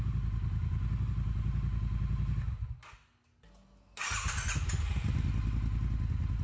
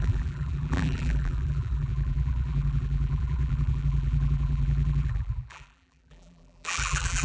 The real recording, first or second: first